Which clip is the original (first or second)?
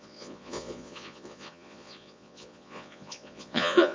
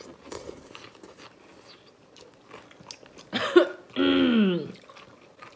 second